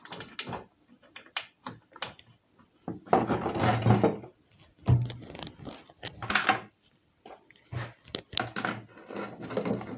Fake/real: real